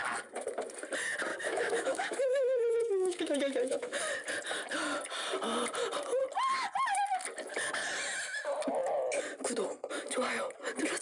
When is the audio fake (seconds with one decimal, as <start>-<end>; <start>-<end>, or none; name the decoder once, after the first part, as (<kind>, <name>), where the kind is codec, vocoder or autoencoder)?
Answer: 1.3-4.0 (autoencoder, DAC-VAE)